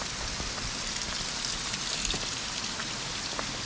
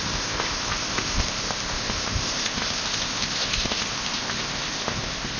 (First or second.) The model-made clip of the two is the second